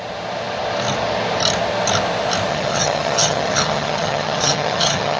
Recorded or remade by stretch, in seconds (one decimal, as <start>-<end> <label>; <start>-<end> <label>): 0.0-2.5 recorded; 2.5-5.2 remade